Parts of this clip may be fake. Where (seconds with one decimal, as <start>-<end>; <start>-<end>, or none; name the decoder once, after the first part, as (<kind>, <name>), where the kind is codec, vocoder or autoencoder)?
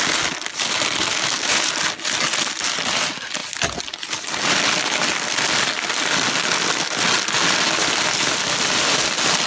1.1-1.7 (autoencoder, DAC-VAE)